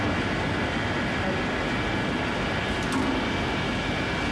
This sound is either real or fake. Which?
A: real